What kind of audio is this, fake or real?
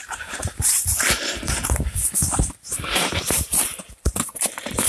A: fake